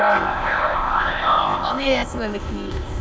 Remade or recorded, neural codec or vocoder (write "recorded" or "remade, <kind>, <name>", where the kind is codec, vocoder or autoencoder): remade, codec, ZipCodec